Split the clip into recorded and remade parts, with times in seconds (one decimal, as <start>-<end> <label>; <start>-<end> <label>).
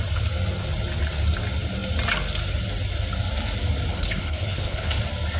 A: 0.0-3.9 recorded; 3.9-5.0 remade; 5.0-5.4 recorded